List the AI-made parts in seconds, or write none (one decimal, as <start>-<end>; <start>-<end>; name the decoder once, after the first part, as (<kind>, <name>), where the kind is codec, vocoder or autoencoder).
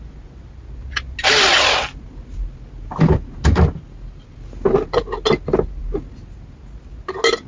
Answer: none